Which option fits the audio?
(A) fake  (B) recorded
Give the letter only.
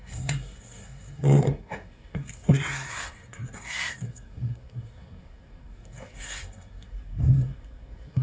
A